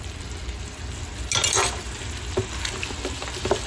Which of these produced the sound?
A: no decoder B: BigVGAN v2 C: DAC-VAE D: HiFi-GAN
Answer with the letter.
A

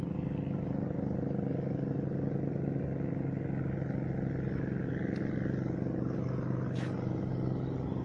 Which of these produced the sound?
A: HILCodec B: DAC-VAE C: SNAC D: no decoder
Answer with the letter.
D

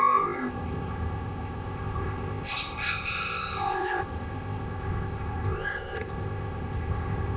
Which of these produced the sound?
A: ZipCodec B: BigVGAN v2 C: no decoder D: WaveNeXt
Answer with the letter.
A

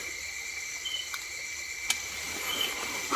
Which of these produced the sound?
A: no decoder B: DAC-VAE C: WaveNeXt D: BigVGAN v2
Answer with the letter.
A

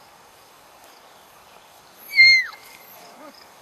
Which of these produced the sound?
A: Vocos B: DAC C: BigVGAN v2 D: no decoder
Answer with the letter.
B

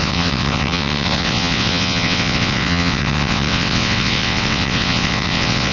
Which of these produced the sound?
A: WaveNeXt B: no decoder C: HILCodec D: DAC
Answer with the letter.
A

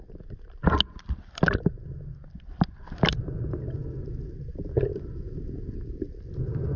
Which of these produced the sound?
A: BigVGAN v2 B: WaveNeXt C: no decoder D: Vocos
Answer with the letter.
C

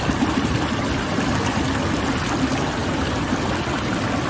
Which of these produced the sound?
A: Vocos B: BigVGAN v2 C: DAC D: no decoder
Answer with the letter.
D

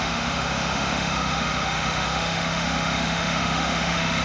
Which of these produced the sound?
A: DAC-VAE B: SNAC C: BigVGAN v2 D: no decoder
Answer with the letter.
A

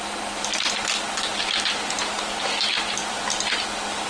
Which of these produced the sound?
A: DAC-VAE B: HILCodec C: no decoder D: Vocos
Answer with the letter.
C